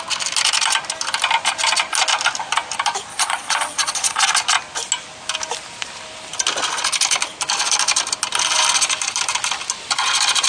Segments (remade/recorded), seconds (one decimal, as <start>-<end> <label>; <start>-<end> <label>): 0.0-3.1 recorded; 3.1-4.3 remade; 4.3-10.5 recorded